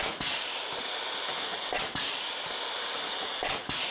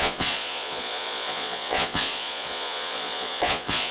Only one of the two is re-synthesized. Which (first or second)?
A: second